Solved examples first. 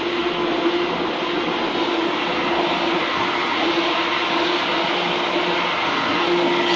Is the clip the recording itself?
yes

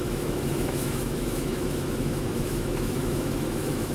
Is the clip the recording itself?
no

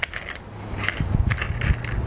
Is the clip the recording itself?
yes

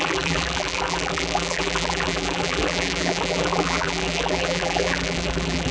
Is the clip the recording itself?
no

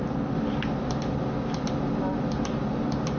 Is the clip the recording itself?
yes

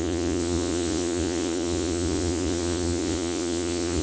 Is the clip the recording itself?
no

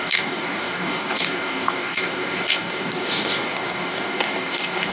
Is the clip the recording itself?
no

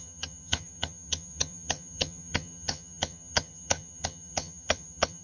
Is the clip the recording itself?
no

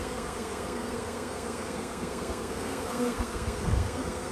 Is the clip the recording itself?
no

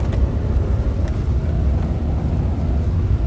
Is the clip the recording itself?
yes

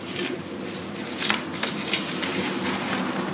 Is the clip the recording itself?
yes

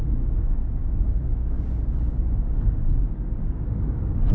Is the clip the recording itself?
no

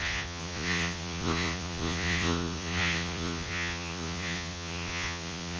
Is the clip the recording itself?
no